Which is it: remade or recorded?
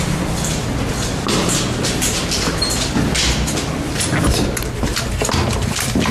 recorded